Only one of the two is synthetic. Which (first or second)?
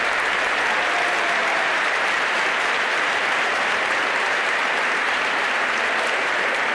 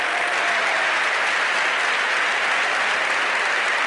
first